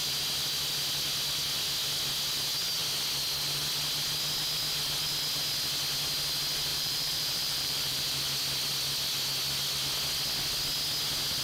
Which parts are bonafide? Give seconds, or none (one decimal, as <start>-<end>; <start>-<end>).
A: 0.0-6.7; 8.2-11.4